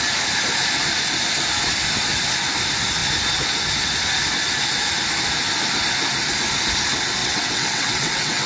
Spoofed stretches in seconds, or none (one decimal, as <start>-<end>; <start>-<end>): 7.2-8.5

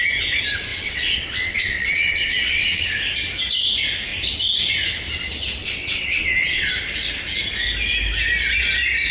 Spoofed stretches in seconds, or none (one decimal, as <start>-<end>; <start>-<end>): 0.7-2.8; 5.6-6.7